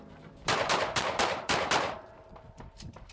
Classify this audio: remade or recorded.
remade